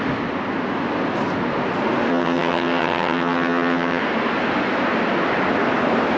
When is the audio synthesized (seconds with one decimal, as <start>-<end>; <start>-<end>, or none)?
2.1-4.0